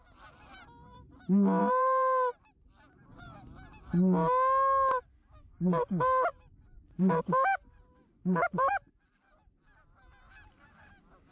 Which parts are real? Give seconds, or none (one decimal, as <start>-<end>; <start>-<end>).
0.0-1.6; 2.4-6.3; 8.7-11.3